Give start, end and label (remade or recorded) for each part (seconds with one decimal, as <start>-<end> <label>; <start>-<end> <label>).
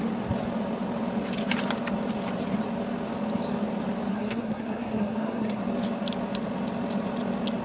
0.0-4.1 recorded; 4.1-5.6 remade; 5.6-7.6 recorded